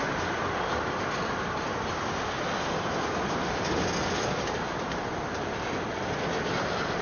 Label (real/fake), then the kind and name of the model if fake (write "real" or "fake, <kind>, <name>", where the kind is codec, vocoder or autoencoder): real